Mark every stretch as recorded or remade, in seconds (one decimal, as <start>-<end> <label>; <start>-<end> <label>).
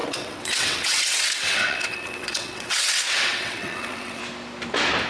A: 0.0-4.2 remade; 4.2-5.1 recorded